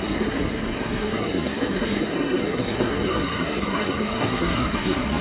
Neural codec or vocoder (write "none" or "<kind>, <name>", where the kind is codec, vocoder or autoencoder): codec, SNAC